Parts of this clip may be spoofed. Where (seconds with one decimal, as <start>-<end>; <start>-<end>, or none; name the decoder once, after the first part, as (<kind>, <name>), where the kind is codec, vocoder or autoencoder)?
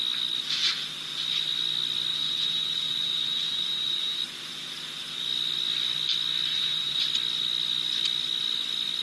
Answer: 2.1-4.5 (vocoder, Vocos); 6.5-7.0